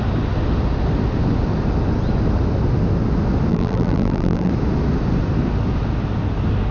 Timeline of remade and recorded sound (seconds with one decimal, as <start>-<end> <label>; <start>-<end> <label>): 0.0-3.5 recorded; 3.5-4.5 remade; 4.5-6.7 recorded